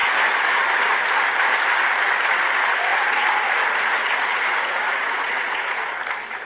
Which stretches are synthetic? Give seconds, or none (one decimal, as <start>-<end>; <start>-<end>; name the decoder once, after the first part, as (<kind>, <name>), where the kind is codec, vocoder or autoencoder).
2.9-5.8 (vocoder, Vocos)